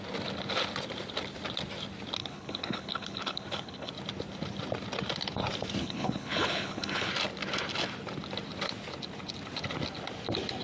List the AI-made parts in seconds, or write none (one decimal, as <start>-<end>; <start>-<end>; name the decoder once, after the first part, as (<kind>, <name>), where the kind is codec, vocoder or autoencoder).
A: 2.2-3.9 (codec, HILCodec); 5.8-7.1

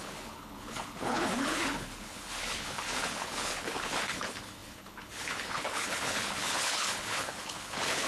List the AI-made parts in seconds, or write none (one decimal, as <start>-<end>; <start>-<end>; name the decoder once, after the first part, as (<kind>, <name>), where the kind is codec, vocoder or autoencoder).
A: 0.0-8.1 (codec, HILCodec)